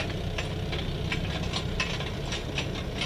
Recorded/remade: recorded